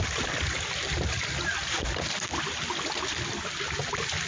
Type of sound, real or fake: real